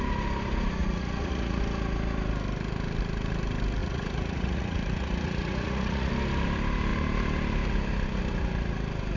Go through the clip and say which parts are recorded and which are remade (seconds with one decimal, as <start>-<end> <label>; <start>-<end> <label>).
0.0-0.8 recorded; 0.8-1.6 remade; 1.6-3.8 recorded; 3.8-6.1 remade; 6.1-9.2 recorded